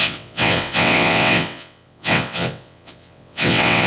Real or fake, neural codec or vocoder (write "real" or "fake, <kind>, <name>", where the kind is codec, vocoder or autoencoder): fake, vocoder, WaveNeXt